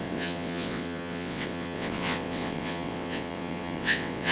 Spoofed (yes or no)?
yes